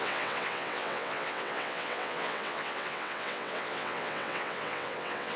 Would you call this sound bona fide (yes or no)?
no